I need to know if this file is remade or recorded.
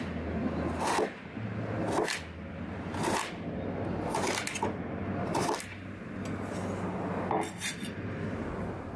recorded